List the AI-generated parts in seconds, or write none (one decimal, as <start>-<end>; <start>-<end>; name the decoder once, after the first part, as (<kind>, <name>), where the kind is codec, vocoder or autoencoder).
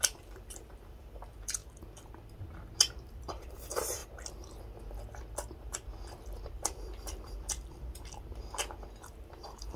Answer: 0.0-1.6 (vocoder, BigVGAN v2); 2.9-4.0; 5.6-9.8